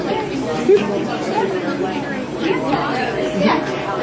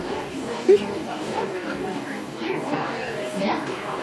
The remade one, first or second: second